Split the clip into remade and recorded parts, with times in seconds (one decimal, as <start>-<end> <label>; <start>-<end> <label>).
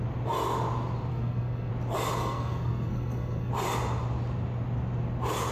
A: 0.0-1.1 recorded; 1.1-1.7 remade; 1.7-2.2 recorded; 2.2-3.5 remade; 3.5-5.5 recorded